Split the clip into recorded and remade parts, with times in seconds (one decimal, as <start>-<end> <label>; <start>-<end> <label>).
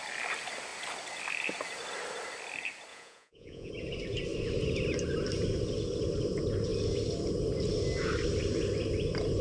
0.0-2.9 recorded; 2.9-3.7 remade; 3.7-9.4 recorded